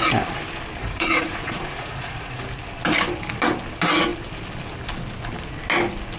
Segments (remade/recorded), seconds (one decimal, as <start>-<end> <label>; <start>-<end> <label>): 0.0-0.8 recorded; 0.8-2.4 remade; 2.4-6.2 recorded